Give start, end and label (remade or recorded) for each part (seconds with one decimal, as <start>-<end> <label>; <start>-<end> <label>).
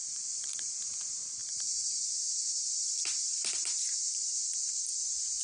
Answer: 0.0-0.7 remade; 0.7-1.4 recorded; 1.4-4.4 remade; 4.4-5.4 recorded